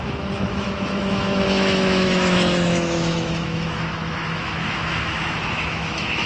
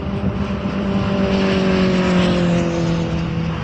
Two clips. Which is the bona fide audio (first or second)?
second